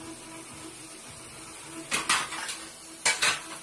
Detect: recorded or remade recorded